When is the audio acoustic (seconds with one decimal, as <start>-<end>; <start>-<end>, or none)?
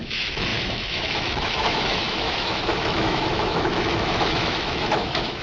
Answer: none